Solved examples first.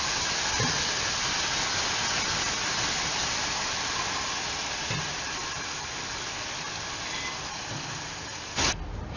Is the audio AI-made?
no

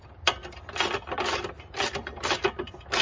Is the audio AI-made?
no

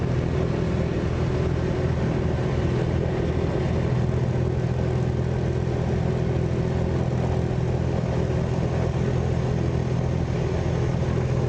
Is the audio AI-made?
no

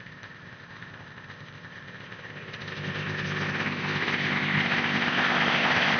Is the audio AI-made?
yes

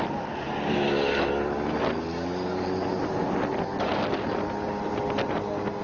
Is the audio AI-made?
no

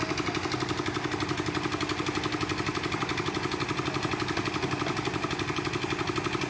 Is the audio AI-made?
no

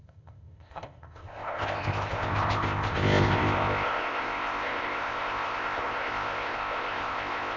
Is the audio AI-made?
yes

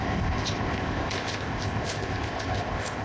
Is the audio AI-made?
yes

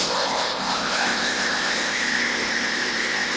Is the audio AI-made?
yes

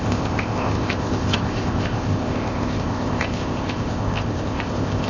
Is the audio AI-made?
yes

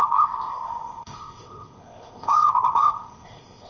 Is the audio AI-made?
yes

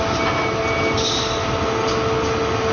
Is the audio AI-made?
no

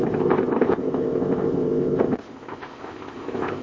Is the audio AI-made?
yes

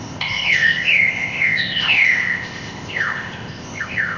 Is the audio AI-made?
yes